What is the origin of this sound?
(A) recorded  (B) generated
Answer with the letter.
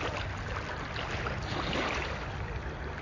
A